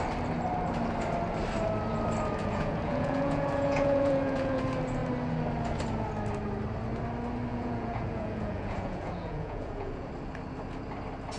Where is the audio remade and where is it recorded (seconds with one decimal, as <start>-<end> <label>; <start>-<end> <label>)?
0.0-2.4 recorded; 2.4-4.6 remade; 4.6-7.5 recorded; 7.5-10.1 remade; 10.1-11.4 recorded